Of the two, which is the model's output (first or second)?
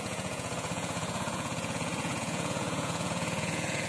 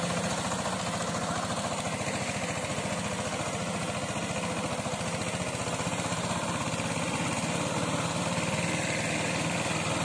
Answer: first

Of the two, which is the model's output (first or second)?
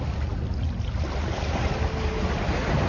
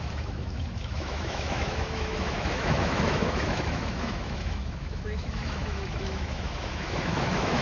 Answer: second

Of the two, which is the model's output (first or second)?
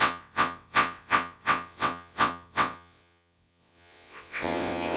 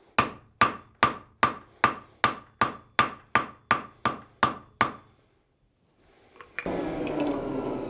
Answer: first